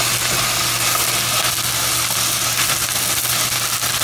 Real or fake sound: real